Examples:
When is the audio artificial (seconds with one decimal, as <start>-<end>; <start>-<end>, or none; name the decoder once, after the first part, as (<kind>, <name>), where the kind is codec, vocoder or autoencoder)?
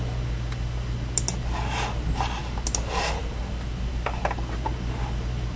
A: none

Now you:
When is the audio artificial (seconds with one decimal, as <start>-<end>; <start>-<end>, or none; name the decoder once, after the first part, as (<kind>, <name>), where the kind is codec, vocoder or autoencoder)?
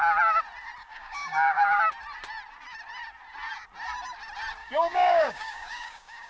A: 0.8-1.8 (codec, DAC); 4.6-6.3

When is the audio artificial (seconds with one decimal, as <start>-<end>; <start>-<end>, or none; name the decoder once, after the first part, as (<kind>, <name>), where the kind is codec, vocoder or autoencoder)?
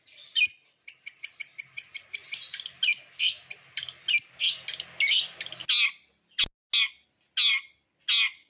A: none